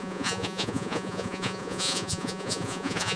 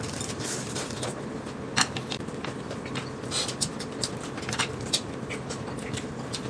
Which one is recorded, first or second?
second